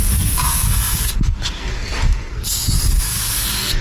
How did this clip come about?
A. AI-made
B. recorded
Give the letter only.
A